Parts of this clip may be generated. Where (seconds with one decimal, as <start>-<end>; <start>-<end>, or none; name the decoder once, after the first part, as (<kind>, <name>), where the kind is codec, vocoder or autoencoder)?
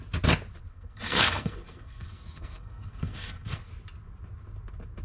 0.7-3.7 (codec, SNAC)